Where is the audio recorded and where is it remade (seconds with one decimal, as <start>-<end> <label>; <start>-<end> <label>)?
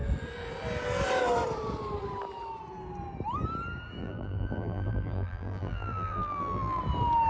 0.0-4.0 recorded; 4.0-6.8 remade; 6.8-7.3 recorded